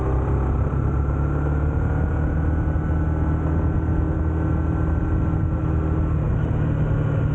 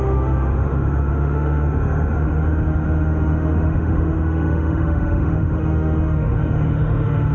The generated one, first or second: second